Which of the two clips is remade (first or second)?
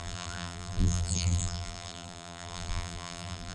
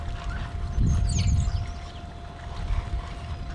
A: first